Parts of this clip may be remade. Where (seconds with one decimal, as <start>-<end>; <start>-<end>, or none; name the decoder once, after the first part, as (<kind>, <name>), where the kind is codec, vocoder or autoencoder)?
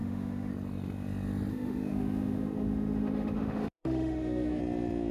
0.0-0.5 (autoencoder, DAC-VAE); 1.5-4.6